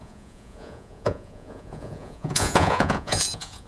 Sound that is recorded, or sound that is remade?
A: remade